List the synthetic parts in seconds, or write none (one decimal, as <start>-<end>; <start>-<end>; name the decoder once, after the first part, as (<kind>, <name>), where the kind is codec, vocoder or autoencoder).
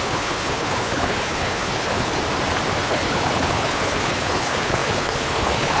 0.0-2.2 (codec, HILCodec); 2.8-5.8